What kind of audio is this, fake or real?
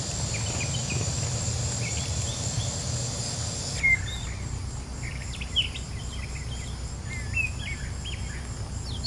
real